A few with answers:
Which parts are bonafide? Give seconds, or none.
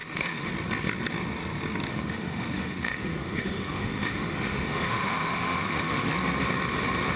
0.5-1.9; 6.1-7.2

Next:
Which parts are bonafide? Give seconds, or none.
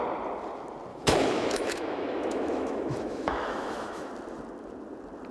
0.0-0.9; 4.1-5.3